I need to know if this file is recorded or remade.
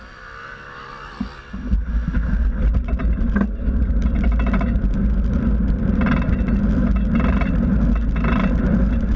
recorded